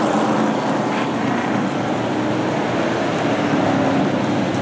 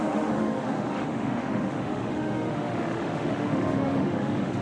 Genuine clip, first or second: first